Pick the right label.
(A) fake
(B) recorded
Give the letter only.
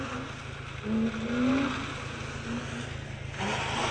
B